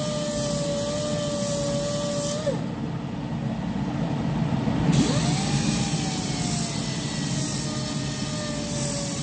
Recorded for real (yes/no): yes